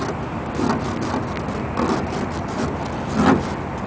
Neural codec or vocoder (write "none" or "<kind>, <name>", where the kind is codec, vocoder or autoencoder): none